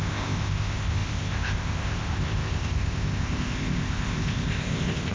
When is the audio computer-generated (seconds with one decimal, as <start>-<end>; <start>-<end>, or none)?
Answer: 0.0-5.1